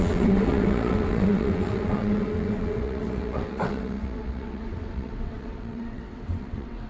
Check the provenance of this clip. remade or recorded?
remade